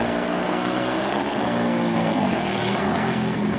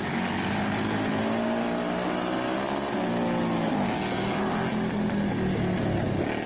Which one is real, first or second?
second